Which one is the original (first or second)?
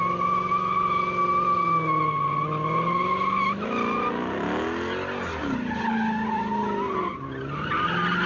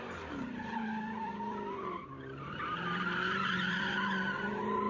first